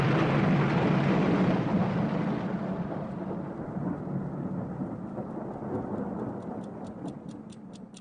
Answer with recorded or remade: recorded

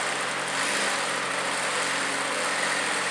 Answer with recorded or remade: recorded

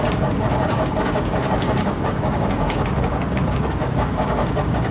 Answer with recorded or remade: remade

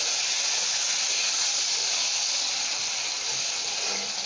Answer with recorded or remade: recorded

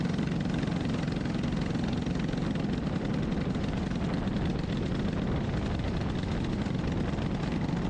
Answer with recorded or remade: recorded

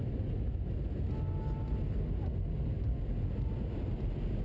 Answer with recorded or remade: recorded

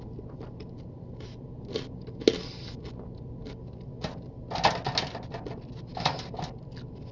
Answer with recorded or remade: recorded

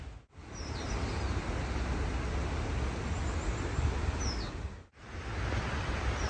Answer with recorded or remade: recorded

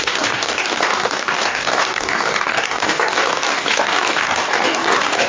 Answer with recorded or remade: remade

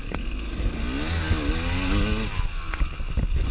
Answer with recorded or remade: recorded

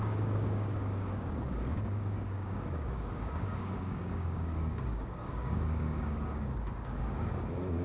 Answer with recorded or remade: remade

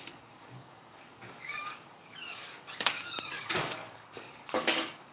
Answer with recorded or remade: remade